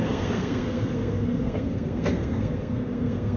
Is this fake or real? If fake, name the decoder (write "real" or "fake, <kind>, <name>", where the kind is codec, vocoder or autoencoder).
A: fake, codec, SNAC